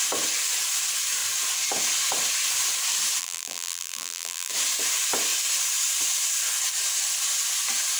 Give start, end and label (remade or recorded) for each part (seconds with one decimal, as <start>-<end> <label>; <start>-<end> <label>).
0.0-3.2 recorded; 3.2-4.5 remade; 4.5-8.0 recorded